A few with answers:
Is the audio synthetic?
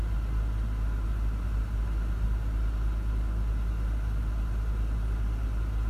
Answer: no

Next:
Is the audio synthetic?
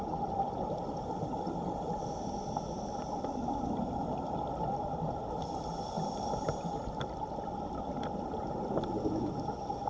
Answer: yes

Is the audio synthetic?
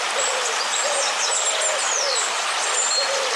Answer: no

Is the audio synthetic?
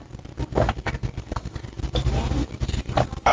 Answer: yes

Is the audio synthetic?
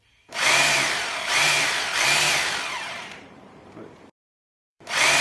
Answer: yes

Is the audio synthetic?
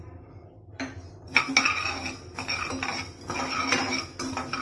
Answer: no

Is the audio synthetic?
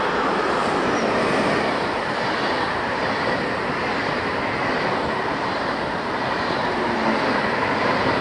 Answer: yes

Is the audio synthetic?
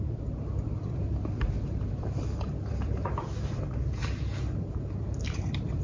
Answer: yes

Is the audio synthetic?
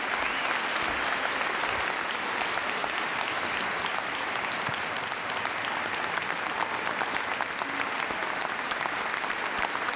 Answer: no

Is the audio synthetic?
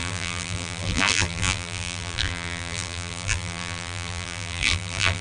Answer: yes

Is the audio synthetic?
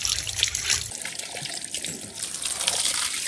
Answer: yes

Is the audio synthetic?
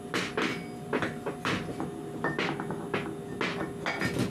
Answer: no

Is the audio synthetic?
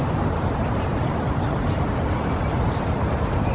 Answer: yes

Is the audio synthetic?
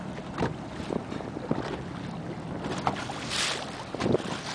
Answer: no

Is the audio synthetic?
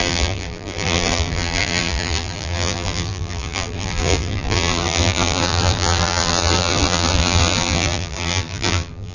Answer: yes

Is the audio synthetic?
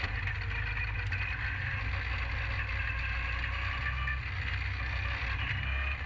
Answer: no